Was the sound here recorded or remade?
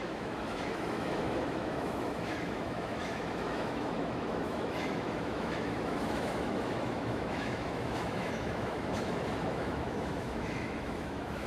remade